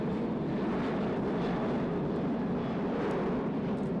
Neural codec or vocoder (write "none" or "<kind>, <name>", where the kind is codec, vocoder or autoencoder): vocoder, BigVGAN v2